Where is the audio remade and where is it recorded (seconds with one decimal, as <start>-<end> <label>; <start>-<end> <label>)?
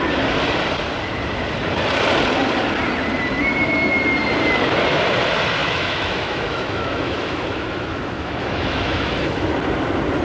0.0-5.6 recorded; 5.6-9.5 remade; 9.5-10.2 recorded